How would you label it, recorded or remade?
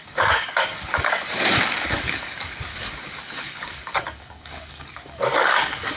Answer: remade